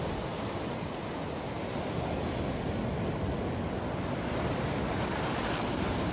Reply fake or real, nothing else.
real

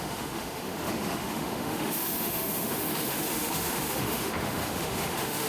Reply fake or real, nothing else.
fake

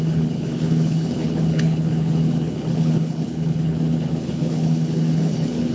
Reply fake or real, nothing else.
fake